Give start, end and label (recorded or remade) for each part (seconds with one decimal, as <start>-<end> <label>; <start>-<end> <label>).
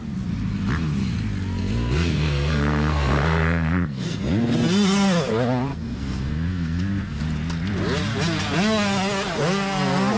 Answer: 0.0-1.6 recorded; 1.6-4.2 remade; 4.2-5.7 recorded; 5.7-7.2 remade; 7.2-10.2 recorded